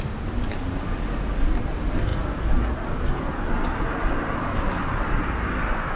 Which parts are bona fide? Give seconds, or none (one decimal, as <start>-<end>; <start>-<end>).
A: 0.0-6.0